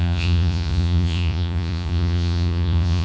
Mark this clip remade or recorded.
remade